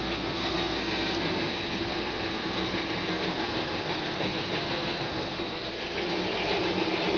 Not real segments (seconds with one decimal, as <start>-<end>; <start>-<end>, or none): 0.0-6.2